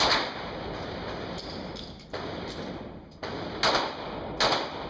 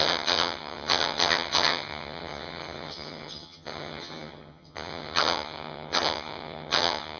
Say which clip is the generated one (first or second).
second